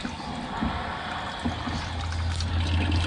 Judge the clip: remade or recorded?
recorded